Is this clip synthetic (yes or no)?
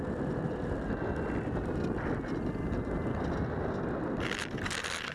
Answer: no